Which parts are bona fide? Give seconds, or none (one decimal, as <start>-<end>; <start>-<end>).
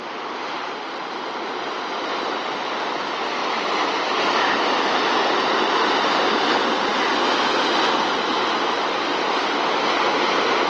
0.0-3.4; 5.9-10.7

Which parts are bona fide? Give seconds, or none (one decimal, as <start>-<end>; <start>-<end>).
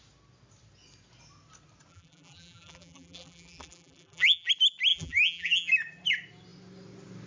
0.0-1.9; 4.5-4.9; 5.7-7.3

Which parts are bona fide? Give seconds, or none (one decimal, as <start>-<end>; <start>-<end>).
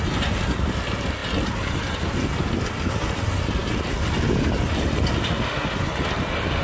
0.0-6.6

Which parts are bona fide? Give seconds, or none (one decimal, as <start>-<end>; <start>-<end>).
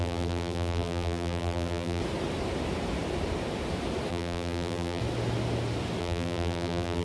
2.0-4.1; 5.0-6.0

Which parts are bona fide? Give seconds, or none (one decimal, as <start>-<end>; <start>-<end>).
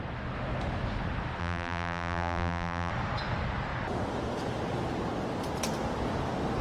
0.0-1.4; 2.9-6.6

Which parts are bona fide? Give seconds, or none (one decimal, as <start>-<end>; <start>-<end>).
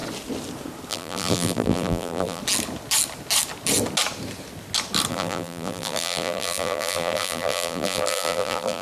0.0-0.9; 2.4-5.1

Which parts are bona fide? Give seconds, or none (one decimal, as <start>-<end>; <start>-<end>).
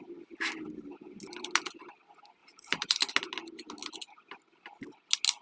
0.0-2.4; 3.1-5.4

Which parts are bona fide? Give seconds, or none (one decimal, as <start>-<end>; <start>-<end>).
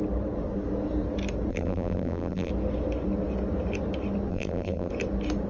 0.0-1.5; 2.5-4.3; 4.9-5.5